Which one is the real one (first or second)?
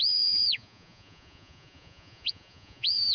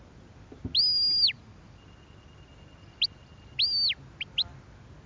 second